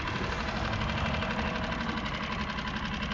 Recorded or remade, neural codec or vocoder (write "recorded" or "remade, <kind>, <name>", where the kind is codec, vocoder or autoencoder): recorded